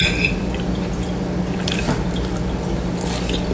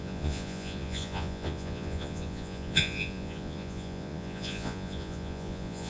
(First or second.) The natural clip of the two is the first